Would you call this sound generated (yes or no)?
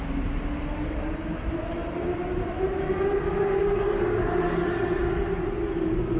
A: no